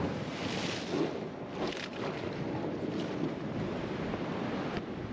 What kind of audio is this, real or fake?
real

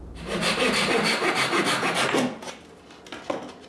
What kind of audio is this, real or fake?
real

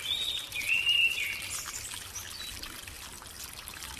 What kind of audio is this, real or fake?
real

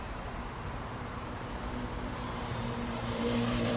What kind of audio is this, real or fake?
fake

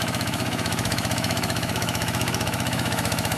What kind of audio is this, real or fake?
fake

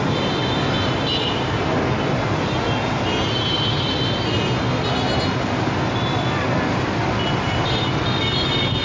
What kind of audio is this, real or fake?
real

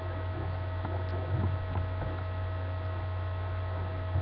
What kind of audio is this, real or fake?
real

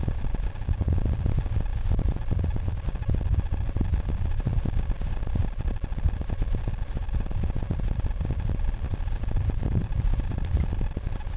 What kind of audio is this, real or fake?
real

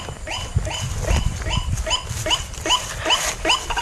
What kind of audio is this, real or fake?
real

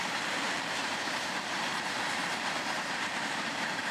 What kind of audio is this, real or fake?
fake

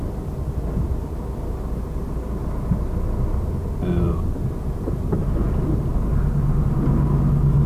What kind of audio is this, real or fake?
real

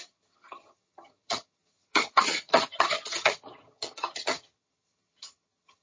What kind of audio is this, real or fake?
fake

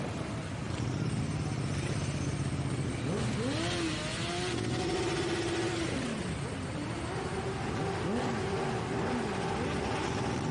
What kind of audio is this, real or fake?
real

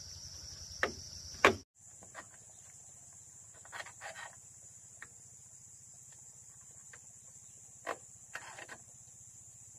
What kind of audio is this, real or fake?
real